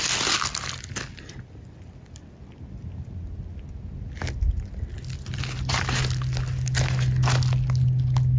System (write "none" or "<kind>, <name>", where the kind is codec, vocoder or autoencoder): none